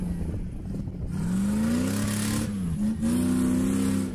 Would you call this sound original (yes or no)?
yes